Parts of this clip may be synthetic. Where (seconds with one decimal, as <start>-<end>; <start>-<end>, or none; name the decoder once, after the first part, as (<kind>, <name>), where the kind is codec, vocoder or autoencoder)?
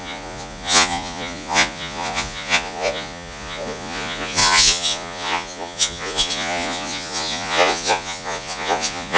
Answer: 0.0-9.2 (vocoder, Vocos)